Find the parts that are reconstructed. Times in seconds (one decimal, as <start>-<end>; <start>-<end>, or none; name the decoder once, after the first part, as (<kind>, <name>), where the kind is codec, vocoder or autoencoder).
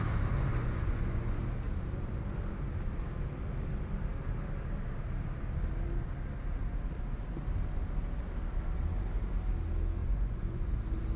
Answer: 0.5-1.4 (vocoder, Vocos); 10.0-10.7